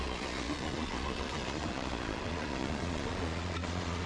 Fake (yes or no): yes